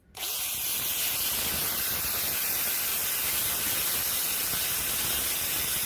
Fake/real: real